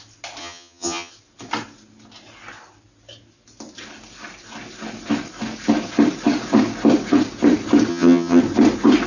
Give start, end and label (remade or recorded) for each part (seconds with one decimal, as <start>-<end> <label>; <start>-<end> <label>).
0.0-0.4 recorded; 0.4-1.1 remade; 1.1-7.9 recorded; 7.9-8.4 remade; 8.4-9.1 recorded